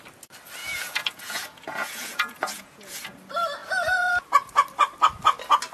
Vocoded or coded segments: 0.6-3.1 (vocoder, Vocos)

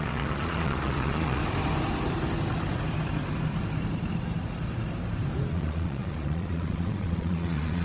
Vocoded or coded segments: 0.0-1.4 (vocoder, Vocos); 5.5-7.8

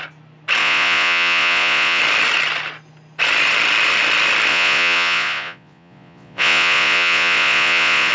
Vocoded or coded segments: 0.6-2.0 (vocoder, Vocos); 4.5-8.1

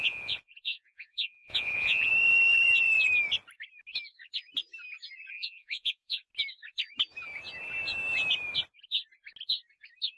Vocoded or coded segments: 0.0-2.1 (vocoder, Vocos); 5.3-6.2